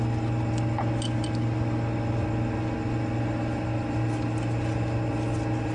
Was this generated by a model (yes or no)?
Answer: no